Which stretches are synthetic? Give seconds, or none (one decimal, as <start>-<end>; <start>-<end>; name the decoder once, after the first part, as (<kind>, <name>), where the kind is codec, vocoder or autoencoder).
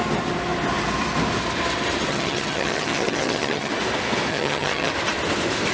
2.1-3.7 (vocoder, HiFi-GAN); 4.3-4.9